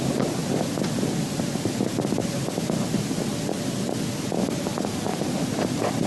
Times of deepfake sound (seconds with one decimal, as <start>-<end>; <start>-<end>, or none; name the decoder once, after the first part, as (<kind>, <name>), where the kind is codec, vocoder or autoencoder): 0.4-4.1 (vocoder, BigVGAN v2); 5.1-6.1